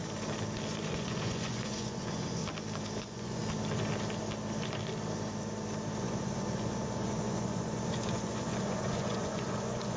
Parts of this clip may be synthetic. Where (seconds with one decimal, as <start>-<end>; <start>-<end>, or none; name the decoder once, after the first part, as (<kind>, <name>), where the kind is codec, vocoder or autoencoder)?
0.9-2.4 (vocoder, Vocos); 3.0-3.4; 6.0-10.0